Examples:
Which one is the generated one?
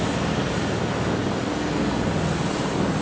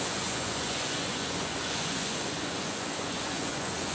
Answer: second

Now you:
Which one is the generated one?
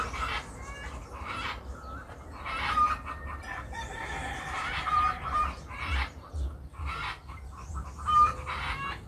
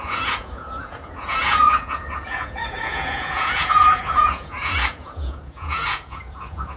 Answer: second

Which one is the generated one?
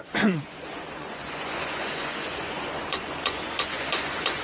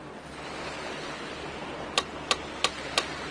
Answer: first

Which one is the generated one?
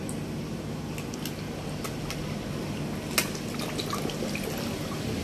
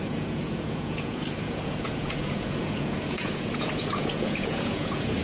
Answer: second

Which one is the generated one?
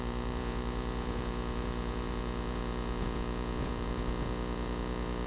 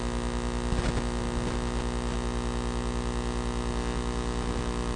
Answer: first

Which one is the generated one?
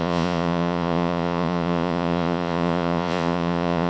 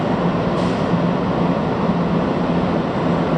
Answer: first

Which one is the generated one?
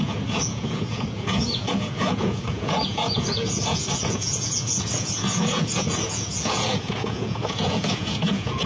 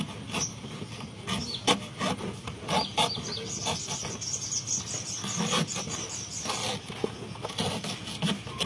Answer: first